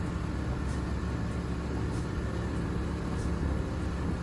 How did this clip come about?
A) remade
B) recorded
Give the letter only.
B